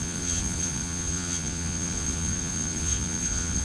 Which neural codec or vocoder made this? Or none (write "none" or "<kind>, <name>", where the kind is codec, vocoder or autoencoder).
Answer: vocoder, Vocos